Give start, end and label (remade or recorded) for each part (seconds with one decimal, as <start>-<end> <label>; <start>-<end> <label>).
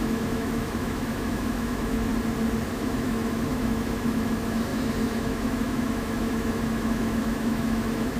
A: 0.0-2.1 remade; 2.1-2.7 recorded; 2.7-8.2 remade